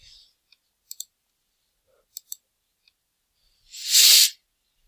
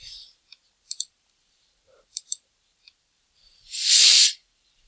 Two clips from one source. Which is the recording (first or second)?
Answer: first